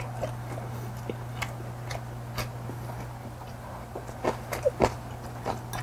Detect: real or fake real